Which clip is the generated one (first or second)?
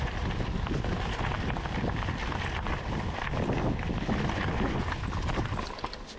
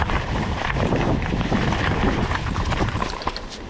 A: second